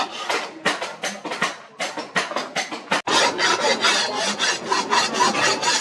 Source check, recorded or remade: recorded